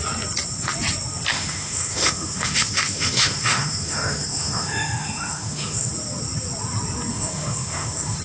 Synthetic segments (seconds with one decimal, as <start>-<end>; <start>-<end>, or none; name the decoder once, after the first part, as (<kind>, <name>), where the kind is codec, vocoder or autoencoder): 1.3-5.9 (autoencoder, DAC-VAE); 7.1-8.2